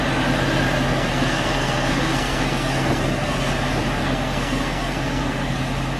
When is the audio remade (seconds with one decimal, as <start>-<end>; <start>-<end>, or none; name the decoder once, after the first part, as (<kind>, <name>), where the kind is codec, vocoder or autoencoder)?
0.9-3.5 (codec, SNAC); 4.0-5.6